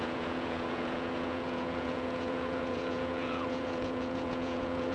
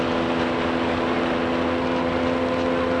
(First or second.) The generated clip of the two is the first